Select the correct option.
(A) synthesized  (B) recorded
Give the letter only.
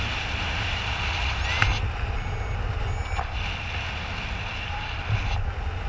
B